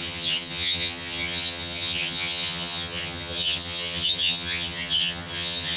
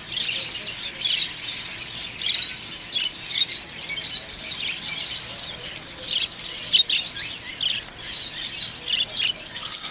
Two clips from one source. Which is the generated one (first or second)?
first